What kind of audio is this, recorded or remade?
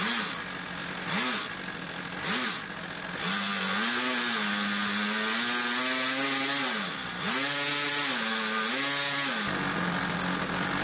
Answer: recorded